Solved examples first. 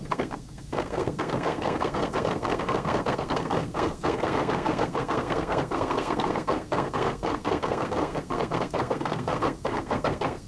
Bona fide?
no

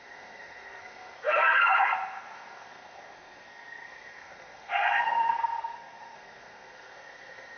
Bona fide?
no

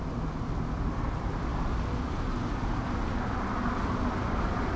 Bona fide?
yes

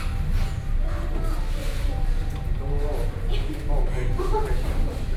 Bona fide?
yes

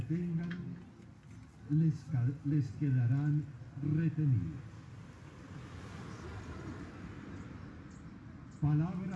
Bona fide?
yes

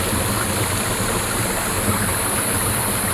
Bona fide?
yes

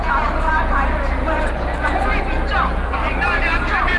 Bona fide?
yes